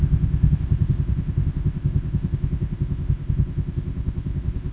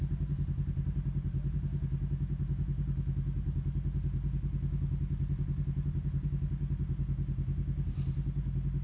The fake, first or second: first